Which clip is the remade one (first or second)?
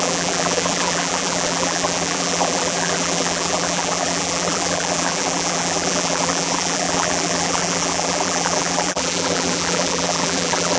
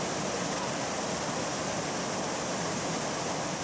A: first